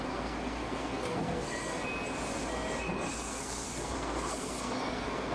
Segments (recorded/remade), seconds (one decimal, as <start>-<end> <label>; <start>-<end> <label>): 0.0-1.8 remade; 1.8-2.8 recorded; 2.8-5.3 remade